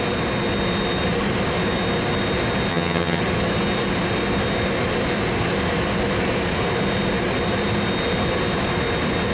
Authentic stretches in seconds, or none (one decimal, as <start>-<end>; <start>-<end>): 0.0-2.7; 3.2-9.3